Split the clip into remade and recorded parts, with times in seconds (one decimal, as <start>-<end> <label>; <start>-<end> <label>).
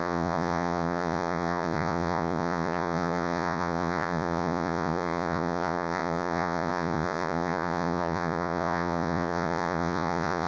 0.0-10.5 remade